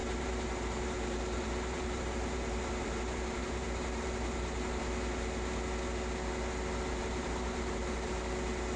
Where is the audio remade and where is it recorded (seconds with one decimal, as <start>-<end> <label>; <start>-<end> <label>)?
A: 0.0-4.8 remade; 4.8-7.0 recorded; 7.0-8.2 remade; 8.2-8.8 recorded